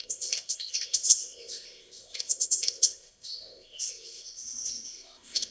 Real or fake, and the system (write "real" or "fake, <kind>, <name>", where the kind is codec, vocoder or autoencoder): fake, codec, ZipCodec